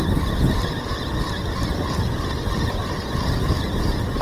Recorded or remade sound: recorded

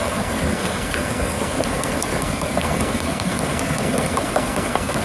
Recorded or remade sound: remade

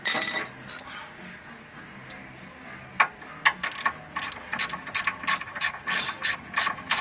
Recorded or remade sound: recorded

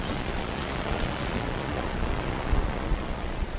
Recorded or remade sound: remade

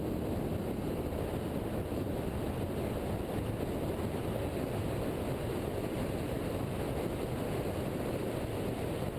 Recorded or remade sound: recorded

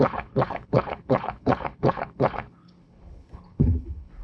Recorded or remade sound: remade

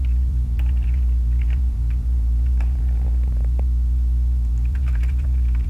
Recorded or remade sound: remade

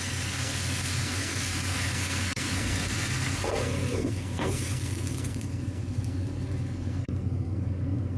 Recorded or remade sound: remade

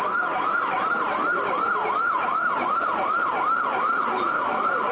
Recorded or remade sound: remade